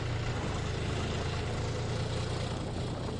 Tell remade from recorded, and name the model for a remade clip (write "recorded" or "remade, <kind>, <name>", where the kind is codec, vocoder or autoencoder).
recorded